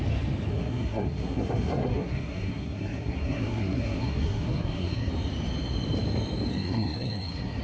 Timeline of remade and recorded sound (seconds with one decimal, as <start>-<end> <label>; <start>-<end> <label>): 0.0-0.5 recorded; 0.5-5.1 remade; 5.1-6.5 recorded; 6.5-7.6 remade